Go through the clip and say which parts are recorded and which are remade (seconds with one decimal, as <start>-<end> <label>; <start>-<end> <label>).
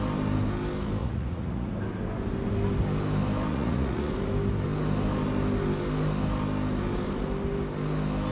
0.0-1.0 recorded; 1.0-1.7 remade; 1.7-3.5 recorded; 3.5-4.1 remade; 4.1-8.3 recorded